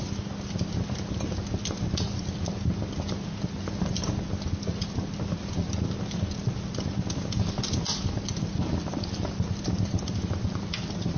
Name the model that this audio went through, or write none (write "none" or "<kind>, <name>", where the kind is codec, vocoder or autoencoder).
none